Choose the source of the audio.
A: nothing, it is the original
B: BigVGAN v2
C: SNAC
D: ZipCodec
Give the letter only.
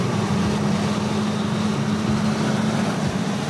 A